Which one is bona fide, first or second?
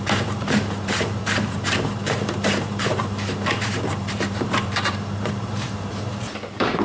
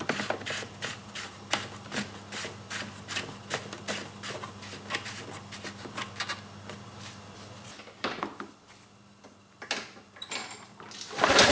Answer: second